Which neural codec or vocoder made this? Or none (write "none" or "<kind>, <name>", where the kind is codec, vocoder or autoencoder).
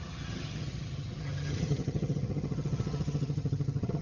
vocoder, HiFi-GAN